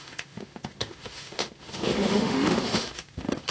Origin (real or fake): fake